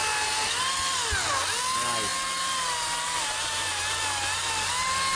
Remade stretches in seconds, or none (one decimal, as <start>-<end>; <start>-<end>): none